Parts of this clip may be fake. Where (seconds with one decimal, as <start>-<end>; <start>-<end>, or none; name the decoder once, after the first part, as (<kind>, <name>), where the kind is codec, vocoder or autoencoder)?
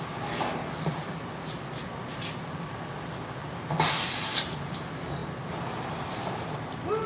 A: none